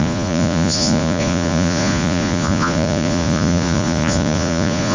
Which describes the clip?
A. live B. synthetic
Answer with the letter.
B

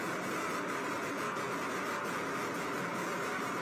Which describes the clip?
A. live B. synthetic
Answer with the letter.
A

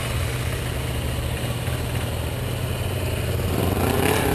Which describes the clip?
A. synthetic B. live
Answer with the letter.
B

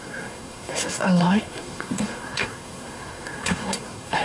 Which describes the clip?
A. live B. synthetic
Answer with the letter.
B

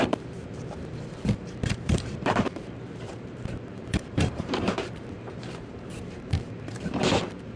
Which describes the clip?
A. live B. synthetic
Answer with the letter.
B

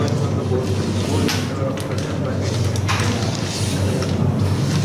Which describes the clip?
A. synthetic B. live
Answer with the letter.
B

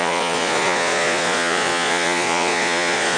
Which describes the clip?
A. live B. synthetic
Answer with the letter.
B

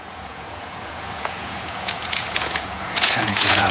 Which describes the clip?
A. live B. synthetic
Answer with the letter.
B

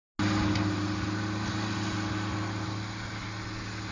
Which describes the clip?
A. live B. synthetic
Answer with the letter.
A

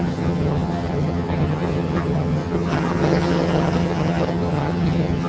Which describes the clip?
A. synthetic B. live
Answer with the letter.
A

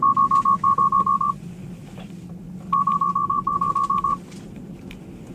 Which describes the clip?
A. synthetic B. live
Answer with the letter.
B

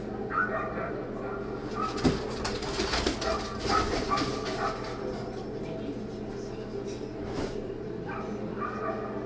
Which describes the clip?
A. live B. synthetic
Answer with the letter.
A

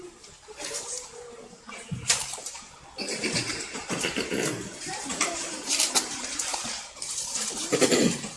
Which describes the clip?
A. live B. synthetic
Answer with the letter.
B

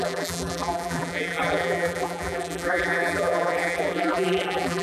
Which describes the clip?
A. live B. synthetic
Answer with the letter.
B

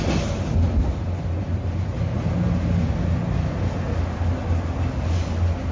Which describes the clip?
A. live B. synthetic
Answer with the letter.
A